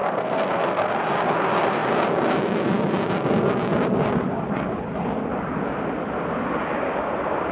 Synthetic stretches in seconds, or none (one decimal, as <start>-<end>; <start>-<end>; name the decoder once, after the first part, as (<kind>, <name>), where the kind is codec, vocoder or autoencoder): 0.0-0.9 (codec, SNAC)